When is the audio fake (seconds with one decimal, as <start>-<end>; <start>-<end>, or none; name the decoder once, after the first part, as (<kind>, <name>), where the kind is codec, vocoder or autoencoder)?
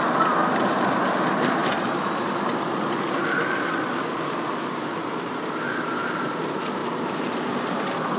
1.6-6.0 (vocoder, BigVGAN v2); 6.8-8.2